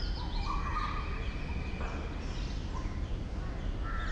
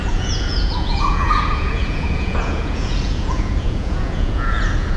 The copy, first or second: second